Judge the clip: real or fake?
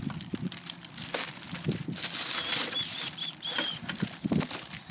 real